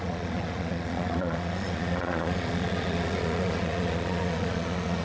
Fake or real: fake